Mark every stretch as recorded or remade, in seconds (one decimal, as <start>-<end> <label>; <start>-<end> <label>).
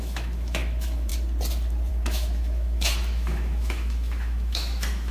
0.0-1.1 remade; 1.1-1.9 recorded; 1.9-5.1 remade